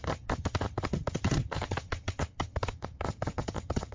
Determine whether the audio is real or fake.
fake